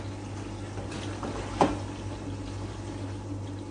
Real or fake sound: real